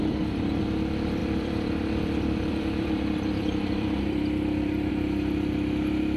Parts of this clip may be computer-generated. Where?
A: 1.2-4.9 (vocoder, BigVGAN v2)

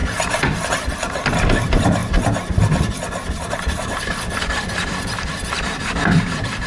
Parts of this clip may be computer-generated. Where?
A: 0.7-2.0 (vocoder, BigVGAN v2); 3.5-6.7

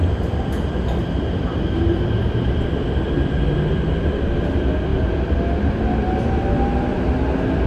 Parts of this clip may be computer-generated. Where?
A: 0.0-3.7 (vocoder, BigVGAN v2)

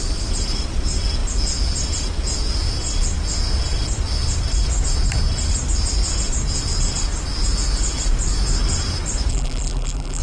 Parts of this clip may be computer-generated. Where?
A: 9.3-10.2 (vocoder, BigVGAN v2)

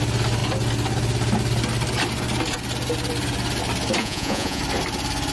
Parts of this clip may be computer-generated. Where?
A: 4.0-4.6 (vocoder, Vocos)

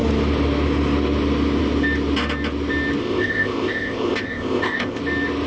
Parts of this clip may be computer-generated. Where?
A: 3.0-5.0 (codec, ZipCodec)